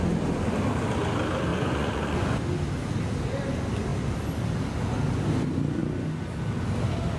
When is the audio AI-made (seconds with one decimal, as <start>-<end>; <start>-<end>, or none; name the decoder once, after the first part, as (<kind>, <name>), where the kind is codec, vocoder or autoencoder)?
1.5-2.4 (vocoder, Vocos)